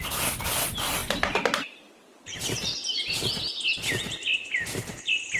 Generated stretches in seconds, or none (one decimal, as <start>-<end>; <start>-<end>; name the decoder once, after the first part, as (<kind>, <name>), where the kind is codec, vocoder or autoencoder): 1.0-3.5 (vocoder, BigVGAN v2)